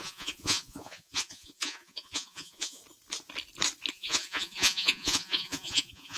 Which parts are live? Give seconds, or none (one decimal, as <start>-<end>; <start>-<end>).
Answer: 2.8-3.9